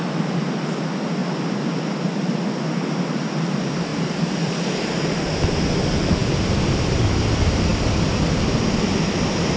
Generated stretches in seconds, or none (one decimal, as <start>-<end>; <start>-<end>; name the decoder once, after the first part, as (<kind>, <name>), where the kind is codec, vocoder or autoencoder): 1.2-2.0 (vocoder, BigVGAN v2); 3.9-4.5